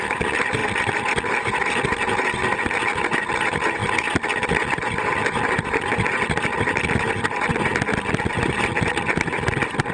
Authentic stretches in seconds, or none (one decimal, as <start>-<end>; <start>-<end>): 0.0-9.9